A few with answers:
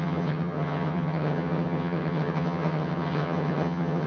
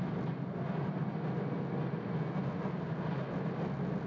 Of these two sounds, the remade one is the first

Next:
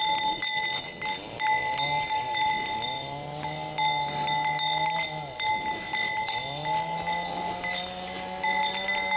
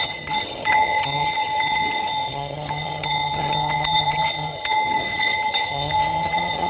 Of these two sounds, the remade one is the second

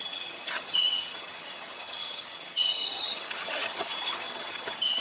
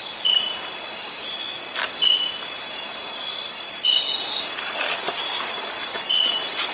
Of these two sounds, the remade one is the first